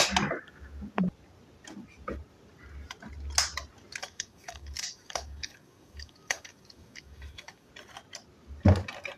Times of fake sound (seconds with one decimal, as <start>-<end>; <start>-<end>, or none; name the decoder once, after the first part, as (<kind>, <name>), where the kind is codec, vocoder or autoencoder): 4.0-7.7 (codec, DAC)